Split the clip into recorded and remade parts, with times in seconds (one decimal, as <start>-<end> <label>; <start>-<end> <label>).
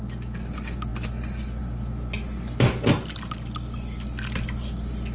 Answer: 0.0-5.1 recorded